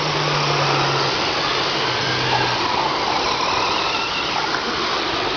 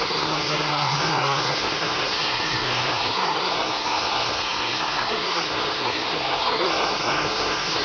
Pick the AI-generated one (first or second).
second